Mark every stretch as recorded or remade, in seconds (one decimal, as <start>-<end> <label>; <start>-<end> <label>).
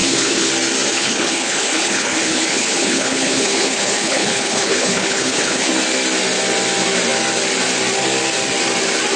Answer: 0.0-0.5 remade; 0.5-0.9 recorded; 0.9-5.7 remade; 5.7-9.2 recorded